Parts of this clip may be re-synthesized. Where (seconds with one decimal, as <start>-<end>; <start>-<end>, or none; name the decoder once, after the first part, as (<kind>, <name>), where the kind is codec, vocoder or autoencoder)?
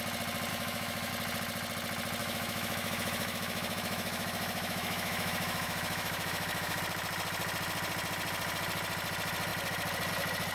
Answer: 0.5-1.1 (autoencoder, DAC-VAE); 2.2-6.8